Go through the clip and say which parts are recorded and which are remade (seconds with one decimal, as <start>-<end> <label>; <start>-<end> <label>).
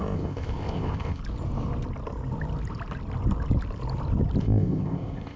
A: 0.0-1.2 remade; 1.2-4.4 recorded; 4.4-5.4 remade